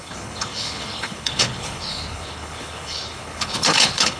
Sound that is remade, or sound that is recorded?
remade